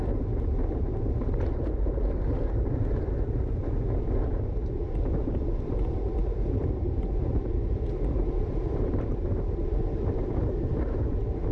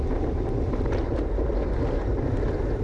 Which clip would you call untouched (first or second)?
second